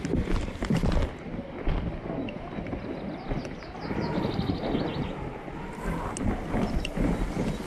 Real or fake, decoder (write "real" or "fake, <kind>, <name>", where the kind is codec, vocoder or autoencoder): real